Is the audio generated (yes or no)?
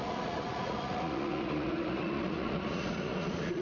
yes